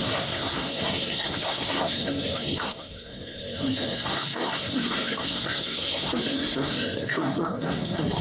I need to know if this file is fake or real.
fake